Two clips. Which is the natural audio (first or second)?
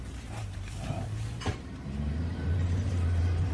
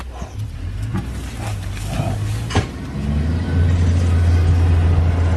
second